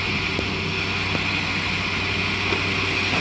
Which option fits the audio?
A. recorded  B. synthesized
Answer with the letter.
A